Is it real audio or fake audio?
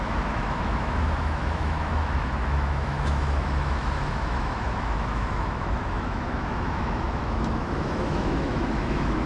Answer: fake